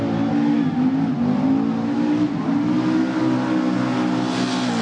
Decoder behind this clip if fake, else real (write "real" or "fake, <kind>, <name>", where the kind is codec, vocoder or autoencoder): real